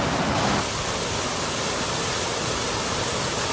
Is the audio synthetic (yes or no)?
no